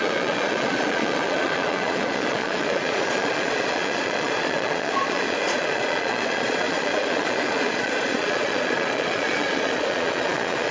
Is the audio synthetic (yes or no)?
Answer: yes